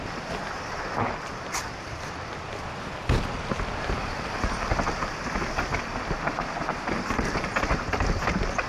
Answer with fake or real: real